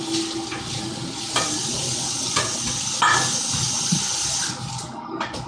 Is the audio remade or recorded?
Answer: recorded